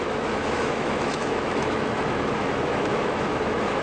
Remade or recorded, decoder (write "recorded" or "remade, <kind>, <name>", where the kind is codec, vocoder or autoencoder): remade, autoencoder, DAC-VAE